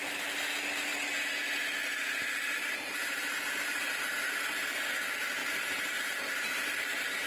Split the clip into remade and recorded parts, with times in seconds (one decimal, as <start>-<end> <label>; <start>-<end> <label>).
0.0-7.3 recorded